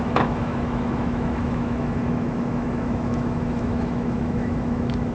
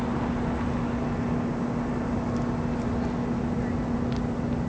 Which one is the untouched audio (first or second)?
second